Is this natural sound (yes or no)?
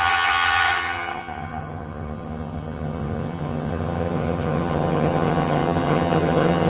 no